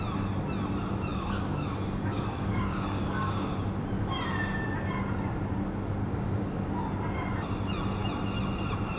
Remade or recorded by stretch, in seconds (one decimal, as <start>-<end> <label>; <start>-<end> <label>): 0.0-1.1 recorded; 1.1-3.5 remade; 3.5-6.0 recorded; 6.0-6.7 remade; 6.7-9.0 recorded